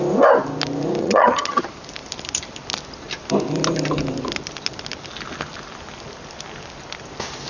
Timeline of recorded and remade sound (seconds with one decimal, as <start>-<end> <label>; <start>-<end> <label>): 0.0-1.0 recorded; 1.0-1.6 remade; 1.6-7.5 recorded